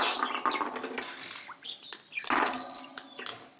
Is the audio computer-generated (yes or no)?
no